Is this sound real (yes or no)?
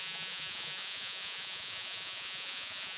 no